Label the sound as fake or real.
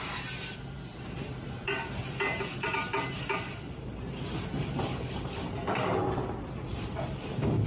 fake